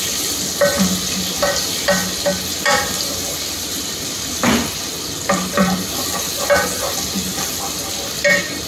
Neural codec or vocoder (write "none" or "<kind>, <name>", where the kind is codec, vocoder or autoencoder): none